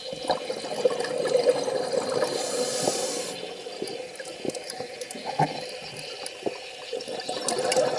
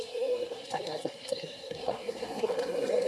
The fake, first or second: second